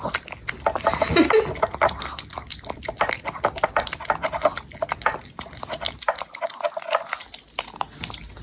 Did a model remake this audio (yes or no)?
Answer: no